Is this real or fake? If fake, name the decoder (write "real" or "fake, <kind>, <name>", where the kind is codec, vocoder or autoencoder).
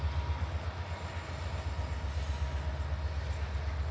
real